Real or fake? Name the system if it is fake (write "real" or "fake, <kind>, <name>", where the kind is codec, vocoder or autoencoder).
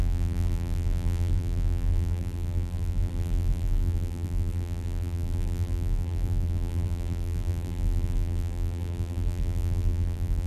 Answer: fake, vocoder, BigVGAN v2